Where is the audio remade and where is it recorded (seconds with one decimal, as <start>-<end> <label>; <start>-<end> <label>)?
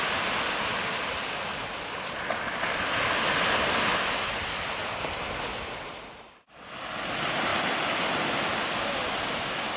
0.0-9.8 recorded